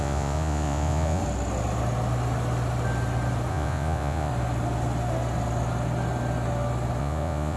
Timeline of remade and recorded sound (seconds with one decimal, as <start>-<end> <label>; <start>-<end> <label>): 0.0-1.2 remade; 1.2-3.5 recorded; 3.5-4.3 remade; 4.3-7.0 recorded; 7.0-7.6 remade